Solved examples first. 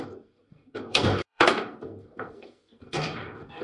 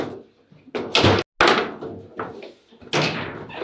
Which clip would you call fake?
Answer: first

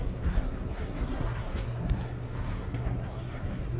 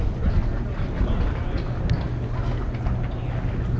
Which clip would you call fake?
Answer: first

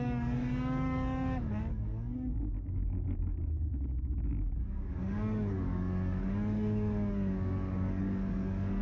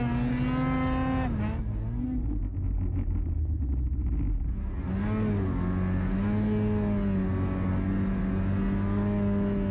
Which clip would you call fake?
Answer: first